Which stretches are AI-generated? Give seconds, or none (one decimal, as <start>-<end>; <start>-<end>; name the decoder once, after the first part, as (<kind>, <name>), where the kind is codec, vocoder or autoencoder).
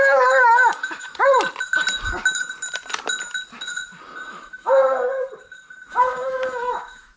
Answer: 0.0-1.3 (autoencoder, DAC-VAE); 4.3-4.8; 5.9-7.2